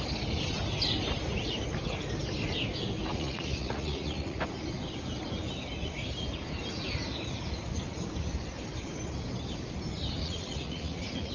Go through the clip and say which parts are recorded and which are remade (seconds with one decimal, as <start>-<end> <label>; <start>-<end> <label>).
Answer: 0.0-3.1 recorded; 3.1-4.4 remade; 4.4-10.2 recorded; 10.2-11.3 remade